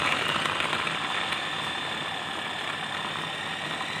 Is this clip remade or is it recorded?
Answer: recorded